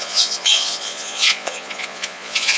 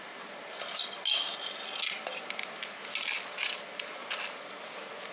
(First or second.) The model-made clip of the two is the first